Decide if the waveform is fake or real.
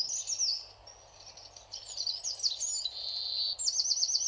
real